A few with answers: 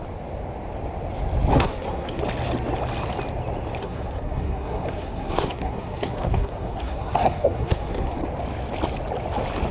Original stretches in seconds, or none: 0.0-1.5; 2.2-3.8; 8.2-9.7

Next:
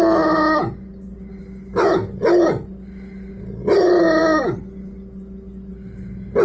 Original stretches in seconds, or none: 0.0-6.4